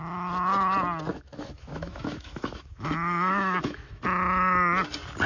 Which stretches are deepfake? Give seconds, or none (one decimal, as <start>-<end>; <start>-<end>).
1.1-4.0